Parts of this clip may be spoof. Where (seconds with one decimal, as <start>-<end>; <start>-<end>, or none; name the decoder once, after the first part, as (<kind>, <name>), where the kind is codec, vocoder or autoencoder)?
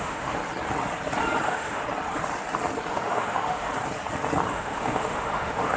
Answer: 0.0-0.4 (autoencoder, DAC-VAE); 1.4-1.8; 2.9-3.7; 4.5-5.8